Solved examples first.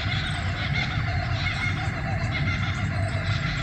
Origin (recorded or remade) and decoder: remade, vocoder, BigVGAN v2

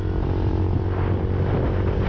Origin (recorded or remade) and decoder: recorded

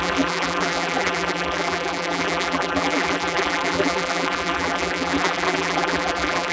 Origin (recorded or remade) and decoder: remade, vocoder, BigVGAN v2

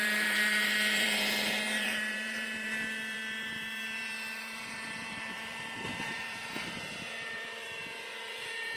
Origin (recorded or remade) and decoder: remade, vocoder, BigVGAN v2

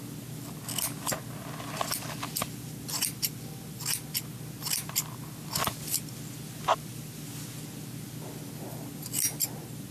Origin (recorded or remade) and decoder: recorded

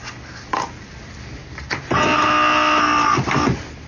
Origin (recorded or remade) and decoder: recorded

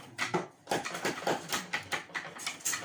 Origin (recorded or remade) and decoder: remade, vocoder, BigVGAN v2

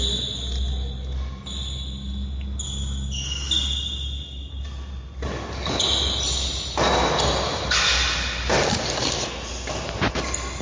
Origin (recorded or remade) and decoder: recorded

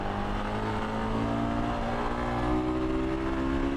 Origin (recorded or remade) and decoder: recorded